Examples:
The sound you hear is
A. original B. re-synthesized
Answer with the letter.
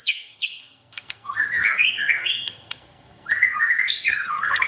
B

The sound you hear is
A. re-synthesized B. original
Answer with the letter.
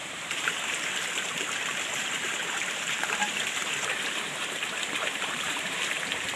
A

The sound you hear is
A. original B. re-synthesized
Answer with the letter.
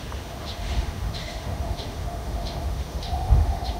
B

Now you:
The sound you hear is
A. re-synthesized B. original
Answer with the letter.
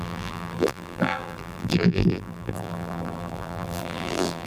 A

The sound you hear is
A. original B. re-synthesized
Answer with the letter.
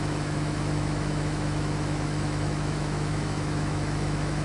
B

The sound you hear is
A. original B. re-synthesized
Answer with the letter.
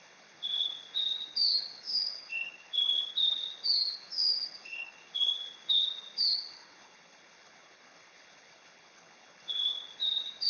B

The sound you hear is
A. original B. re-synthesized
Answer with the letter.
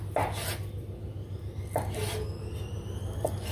A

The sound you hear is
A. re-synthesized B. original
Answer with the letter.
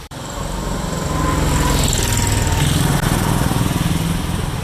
A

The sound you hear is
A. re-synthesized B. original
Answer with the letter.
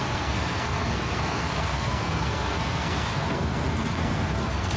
A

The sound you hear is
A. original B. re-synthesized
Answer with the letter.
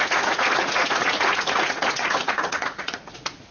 B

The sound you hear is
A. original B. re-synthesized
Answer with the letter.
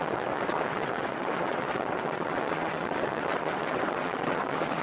B